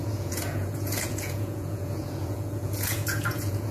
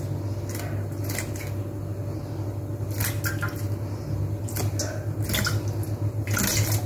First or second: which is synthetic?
first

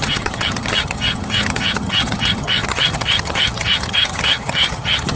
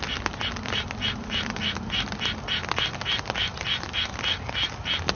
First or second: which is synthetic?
first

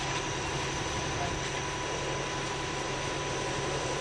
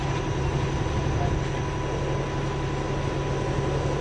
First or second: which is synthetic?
first